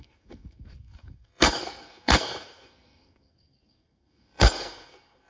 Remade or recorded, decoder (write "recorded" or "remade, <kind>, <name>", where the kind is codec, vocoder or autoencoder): remade, codec, SNAC